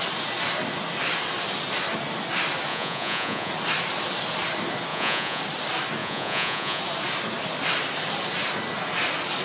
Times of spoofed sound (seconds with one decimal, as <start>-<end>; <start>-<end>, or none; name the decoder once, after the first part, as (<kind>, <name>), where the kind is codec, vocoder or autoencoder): 2.7-3.5 (vocoder, Vocos); 4.9-5.4; 6.0-6.8